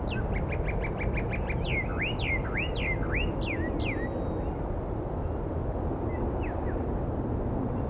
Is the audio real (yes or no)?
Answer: yes